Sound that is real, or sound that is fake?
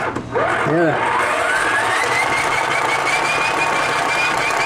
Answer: real